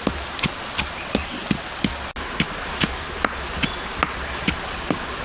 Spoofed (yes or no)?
no